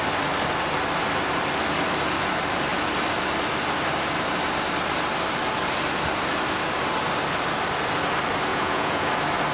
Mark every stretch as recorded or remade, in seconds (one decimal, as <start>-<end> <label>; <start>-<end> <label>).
0.0-8.5 recorded; 8.5-9.1 remade; 9.1-9.5 recorded